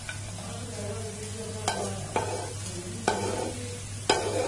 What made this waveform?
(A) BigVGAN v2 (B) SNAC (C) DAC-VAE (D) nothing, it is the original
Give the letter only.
D